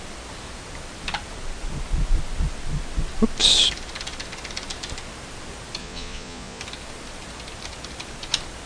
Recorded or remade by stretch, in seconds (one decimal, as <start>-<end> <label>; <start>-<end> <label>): 0.0-5.8 recorded; 5.8-6.6 remade; 6.6-8.7 recorded